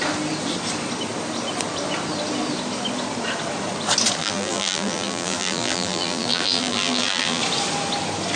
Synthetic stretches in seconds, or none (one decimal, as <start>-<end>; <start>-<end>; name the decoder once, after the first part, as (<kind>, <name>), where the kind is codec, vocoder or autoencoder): 4.2-7.4 (vocoder, BigVGAN v2)